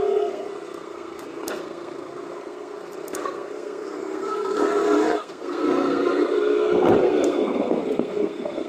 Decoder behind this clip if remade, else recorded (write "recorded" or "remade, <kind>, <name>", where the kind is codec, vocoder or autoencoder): remade, codec, SNAC